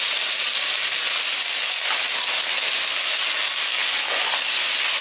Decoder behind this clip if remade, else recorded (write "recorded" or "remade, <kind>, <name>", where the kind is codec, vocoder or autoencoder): recorded